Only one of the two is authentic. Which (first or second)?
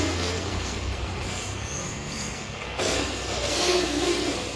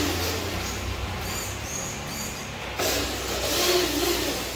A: second